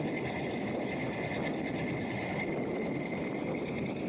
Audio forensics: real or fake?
real